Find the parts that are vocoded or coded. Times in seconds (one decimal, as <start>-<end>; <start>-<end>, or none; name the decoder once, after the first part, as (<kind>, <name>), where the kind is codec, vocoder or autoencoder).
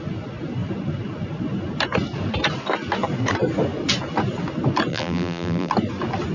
4.9-5.7 (vocoder, BigVGAN v2)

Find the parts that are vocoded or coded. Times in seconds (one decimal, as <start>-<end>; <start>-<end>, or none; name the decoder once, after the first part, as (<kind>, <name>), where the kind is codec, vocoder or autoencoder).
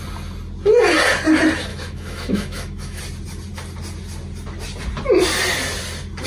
1.7-3.0 (autoencoder, DAC-VAE)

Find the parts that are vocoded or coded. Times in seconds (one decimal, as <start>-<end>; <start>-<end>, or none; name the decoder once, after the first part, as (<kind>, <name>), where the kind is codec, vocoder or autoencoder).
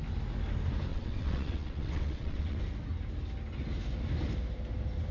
0.9-2.6 (vocoder, WaveNeXt)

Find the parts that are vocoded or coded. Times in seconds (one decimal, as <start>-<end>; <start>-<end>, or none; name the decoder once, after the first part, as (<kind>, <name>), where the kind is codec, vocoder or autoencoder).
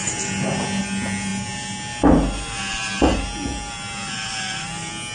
none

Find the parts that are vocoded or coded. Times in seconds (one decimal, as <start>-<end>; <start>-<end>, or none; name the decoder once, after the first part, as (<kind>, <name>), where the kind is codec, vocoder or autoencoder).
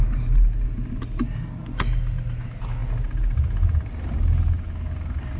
none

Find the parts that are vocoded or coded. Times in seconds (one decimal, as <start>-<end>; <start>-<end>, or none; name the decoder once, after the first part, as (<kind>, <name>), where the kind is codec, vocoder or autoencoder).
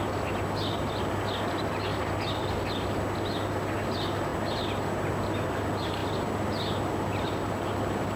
none